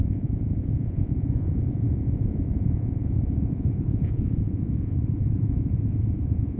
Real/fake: fake